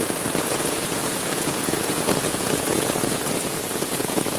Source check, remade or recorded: remade